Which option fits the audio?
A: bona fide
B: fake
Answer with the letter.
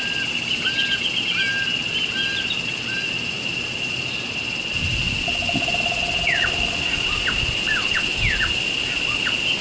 A